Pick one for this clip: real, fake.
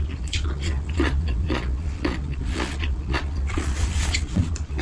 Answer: fake